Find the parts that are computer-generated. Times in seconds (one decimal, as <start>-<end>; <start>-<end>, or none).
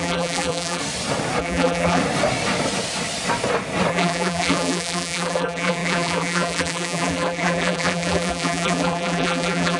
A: 0.0-0.8; 1.4-2.0; 3.9-9.8